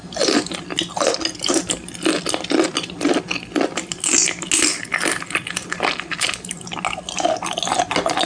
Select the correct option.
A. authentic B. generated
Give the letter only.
A